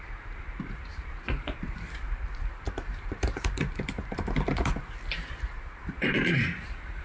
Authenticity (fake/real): fake